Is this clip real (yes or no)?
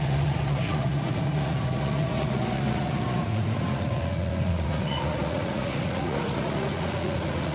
no